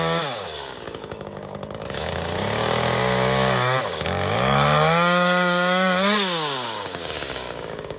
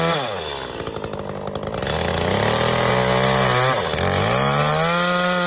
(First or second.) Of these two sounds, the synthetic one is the first